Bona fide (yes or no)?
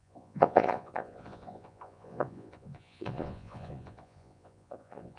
no